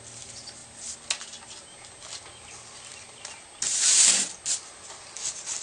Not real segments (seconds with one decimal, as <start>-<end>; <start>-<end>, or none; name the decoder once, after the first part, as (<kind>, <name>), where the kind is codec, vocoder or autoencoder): none